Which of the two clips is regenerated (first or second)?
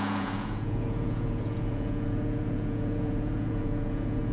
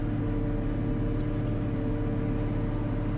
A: first